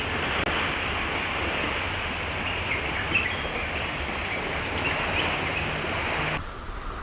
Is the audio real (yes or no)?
yes